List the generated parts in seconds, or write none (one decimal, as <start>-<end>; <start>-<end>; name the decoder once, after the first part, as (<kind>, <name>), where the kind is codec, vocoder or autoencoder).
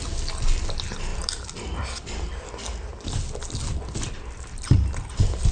none